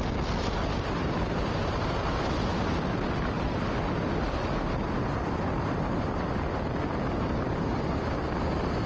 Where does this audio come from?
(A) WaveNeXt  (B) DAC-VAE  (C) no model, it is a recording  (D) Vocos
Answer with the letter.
C